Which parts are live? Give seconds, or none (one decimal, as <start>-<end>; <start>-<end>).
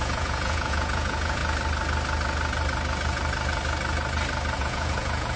1.4-4.6